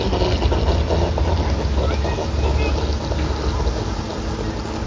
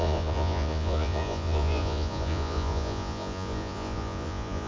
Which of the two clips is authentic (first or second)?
first